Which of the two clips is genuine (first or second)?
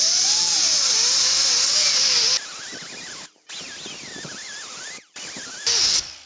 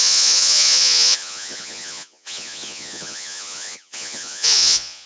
first